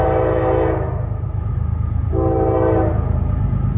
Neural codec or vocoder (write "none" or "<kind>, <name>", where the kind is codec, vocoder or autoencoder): none